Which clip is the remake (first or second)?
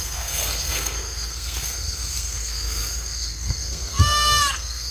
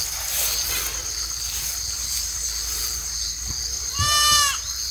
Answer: first